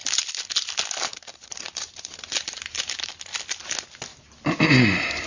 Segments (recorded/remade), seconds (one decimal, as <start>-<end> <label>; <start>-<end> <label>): 0.0-1.1 recorded; 1.1-3.1 remade; 3.1-4.1 recorded; 4.1-5.3 remade